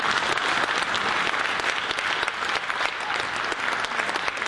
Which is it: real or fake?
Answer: real